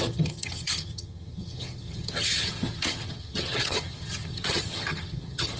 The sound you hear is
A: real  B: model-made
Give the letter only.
B